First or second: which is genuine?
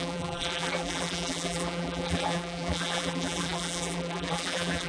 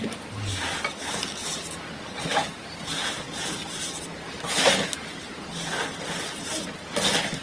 second